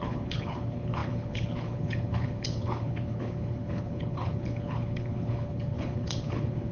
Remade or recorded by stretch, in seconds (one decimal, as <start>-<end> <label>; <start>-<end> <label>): 0.0-6.7 remade